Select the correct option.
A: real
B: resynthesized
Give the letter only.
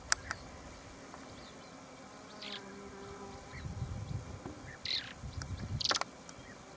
A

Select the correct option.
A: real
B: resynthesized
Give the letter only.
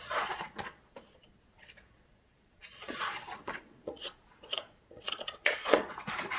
B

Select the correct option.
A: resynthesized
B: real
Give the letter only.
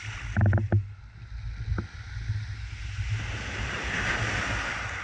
B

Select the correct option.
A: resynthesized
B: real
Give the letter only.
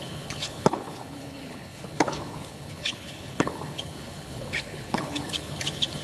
A